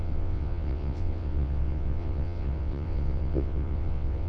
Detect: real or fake fake